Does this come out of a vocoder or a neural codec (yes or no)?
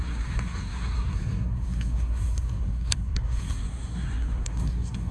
yes